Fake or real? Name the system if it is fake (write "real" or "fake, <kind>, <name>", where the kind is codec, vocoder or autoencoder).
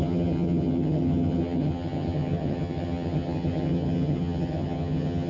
fake, vocoder, HiFi-GAN